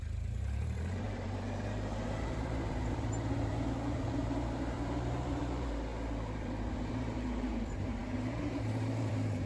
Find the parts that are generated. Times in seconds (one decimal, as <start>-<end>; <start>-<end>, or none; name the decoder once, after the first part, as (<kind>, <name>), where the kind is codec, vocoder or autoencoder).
0.0-9.5 (vocoder, BigVGAN v2)